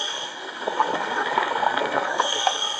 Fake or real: fake